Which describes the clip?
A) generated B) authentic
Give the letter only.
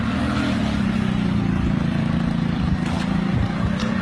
B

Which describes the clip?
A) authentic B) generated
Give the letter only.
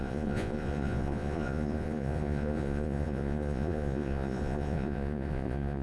B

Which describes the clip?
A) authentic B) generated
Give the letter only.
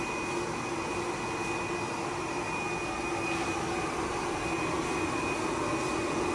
A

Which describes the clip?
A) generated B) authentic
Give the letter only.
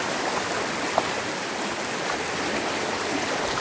B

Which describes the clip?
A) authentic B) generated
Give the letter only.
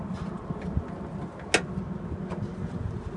A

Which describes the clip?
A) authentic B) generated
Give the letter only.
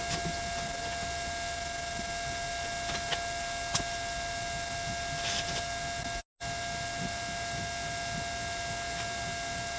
A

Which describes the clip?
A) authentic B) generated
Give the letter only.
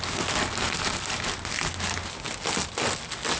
A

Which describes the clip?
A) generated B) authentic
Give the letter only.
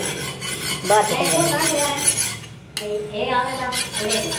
B